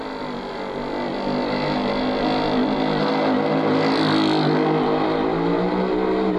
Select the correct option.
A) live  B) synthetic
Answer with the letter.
A